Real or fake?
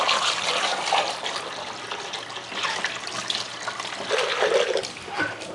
real